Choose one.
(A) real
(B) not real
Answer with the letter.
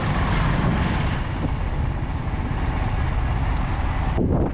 A